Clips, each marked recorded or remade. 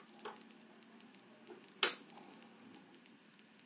recorded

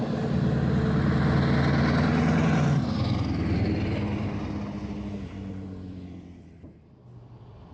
recorded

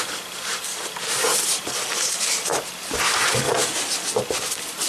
recorded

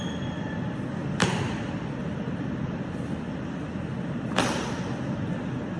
recorded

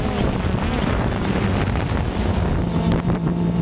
recorded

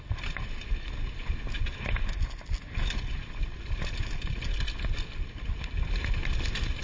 recorded